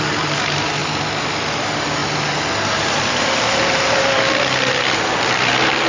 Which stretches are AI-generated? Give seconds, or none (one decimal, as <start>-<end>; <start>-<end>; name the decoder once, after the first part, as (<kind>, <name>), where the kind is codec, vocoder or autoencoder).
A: 0.0-0.8 (vocoder, BigVGAN v2); 1.6-2.0; 2.7-5.9

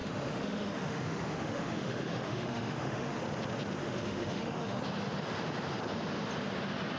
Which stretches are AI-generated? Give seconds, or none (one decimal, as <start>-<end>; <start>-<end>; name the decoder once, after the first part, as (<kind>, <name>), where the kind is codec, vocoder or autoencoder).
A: 0.0-3.2 (autoencoder, DAC-VAE); 3.8-4.8

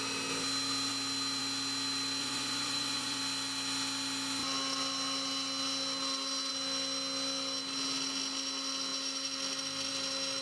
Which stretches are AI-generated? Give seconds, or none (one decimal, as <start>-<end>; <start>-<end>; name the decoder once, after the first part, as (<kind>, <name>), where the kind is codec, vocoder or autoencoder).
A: 2.2-3.2 (vocoder, Vocos)

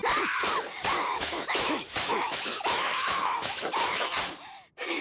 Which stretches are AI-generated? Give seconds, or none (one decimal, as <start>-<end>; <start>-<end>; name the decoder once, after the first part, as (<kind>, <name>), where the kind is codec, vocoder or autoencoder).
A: 1.1-4.1 (autoencoder, DAC-VAE)

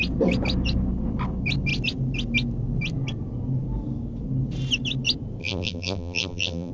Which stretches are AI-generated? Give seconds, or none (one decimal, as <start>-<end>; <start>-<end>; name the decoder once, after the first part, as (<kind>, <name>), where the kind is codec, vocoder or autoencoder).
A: 5.4-6.7 (vocoder, BigVGAN v2)

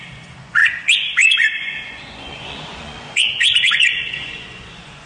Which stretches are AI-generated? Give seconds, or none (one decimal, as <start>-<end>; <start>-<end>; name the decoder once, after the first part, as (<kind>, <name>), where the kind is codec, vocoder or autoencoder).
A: 0.0-5.1 (vocoder, Vocos)

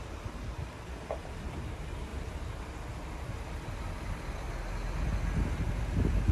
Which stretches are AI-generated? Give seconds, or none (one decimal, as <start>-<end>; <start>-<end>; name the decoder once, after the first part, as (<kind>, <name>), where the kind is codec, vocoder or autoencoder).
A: none

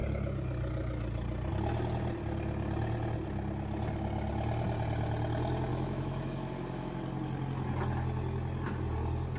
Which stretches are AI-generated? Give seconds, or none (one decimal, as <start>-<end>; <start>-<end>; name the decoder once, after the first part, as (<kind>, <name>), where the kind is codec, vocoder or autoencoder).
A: 5.7-6.9 (autoencoder, DAC-VAE)